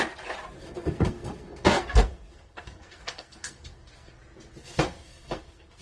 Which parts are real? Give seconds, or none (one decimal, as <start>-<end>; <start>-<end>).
0.0-0.6; 4.1-4.6